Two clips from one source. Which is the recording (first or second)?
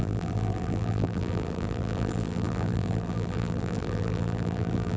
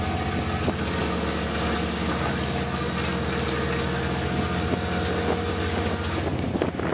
second